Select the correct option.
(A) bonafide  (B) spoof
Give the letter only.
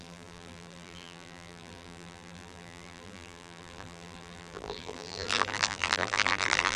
B